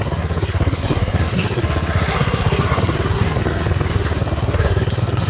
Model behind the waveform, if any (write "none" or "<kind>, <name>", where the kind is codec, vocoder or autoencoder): codec, SNAC